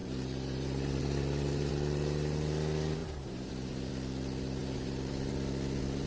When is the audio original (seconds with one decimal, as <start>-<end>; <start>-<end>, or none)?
1.7-3.0; 3.9-4.6; 5.3-6.1